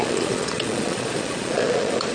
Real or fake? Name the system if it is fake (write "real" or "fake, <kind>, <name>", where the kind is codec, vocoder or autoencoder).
fake, vocoder, Vocos